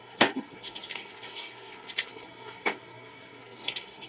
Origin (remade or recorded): remade